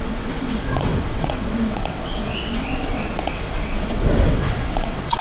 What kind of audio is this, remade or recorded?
remade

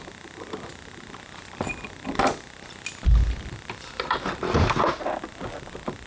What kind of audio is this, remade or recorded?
recorded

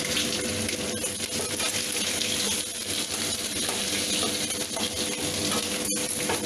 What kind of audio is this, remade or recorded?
recorded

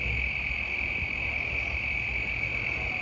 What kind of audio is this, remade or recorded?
recorded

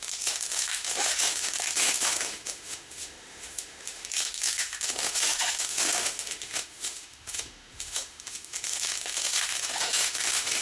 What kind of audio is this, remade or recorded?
remade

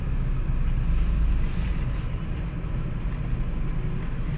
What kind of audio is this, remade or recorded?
recorded